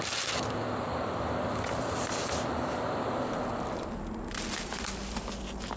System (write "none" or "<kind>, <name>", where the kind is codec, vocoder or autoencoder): none